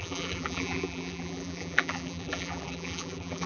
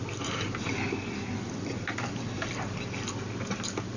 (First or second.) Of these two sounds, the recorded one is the second